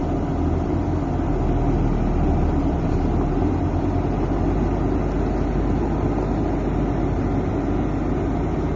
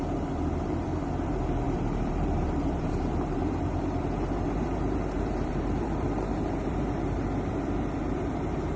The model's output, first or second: second